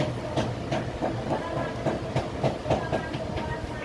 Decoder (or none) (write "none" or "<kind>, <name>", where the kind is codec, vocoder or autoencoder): none